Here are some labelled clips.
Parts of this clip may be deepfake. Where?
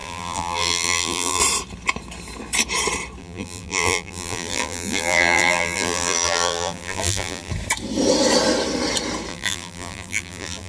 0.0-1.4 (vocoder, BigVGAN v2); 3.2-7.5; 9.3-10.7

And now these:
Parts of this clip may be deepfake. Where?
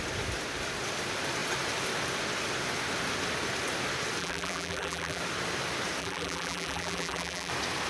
4.2-5.2 (vocoder, BigVGAN v2); 6.0-7.5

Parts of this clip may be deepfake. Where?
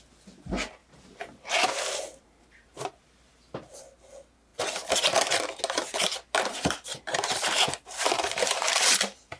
0.8-3.8 (vocoder, BigVGAN v2); 6.9-9.4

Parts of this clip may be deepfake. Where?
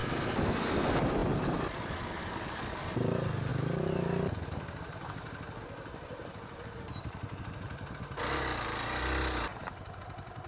1.2-2.1 (vocoder, BigVGAN v2); 9.5-10.0